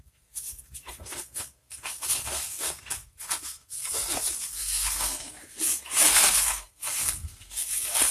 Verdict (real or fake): fake